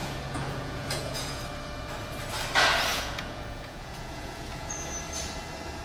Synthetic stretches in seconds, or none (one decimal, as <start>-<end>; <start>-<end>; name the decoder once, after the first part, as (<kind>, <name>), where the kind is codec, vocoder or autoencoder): 0.0-1.4 (vocoder, Vocos); 2.9-4.7